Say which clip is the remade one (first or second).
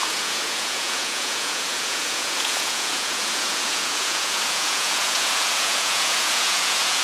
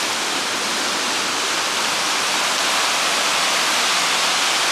first